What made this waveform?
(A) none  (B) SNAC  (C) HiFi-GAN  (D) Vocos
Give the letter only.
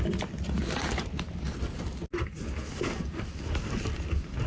A